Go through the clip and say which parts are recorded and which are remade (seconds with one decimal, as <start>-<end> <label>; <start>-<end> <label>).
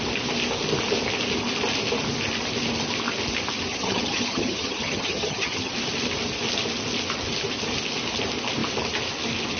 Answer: 0.0-3.7 recorded; 3.7-5.7 remade; 5.7-9.6 recorded